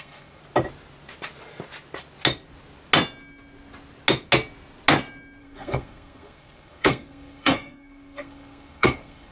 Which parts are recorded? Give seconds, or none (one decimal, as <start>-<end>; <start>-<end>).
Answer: 0.4-5.4

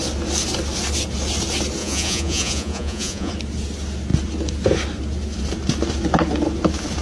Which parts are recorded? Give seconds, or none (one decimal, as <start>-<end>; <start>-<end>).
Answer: 0.0-1.8; 3.3-7.0

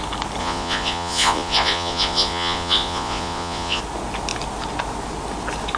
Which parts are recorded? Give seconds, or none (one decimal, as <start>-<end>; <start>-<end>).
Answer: 0.0-0.4; 3.8-5.8